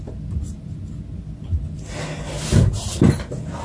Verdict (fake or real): real